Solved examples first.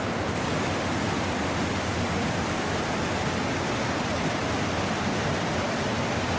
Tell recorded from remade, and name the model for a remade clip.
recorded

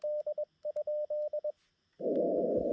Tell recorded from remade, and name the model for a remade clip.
recorded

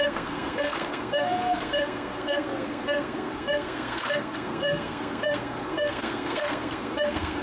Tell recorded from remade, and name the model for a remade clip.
remade, codec, SNAC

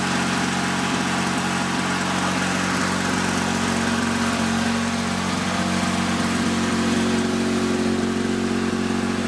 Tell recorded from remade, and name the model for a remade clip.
recorded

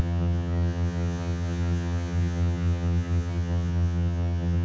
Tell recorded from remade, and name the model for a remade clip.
remade, vocoder, HiFi-GAN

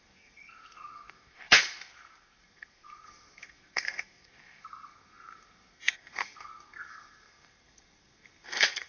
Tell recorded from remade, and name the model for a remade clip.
remade, codec, SNAC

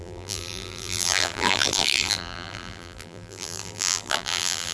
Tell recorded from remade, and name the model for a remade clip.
remade, vocoder, BigVGAN v2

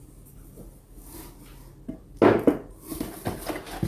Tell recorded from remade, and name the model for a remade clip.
recorded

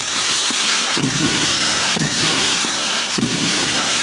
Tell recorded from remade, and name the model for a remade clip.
remade, codec, SNAC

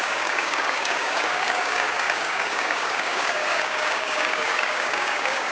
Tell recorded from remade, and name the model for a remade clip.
remade, codec, DAC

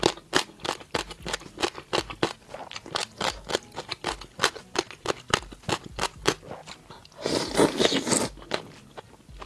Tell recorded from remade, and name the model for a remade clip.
recorded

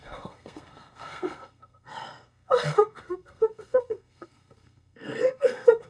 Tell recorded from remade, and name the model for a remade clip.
remade, codec, SNAC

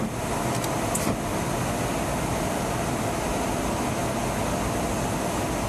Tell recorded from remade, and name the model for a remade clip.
recorded